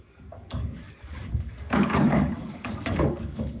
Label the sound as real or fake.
fake